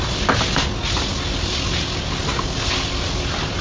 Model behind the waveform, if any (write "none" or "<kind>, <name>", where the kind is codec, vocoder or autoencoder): none